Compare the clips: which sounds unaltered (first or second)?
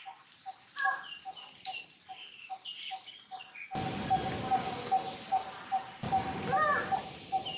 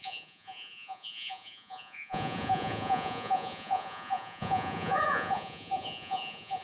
first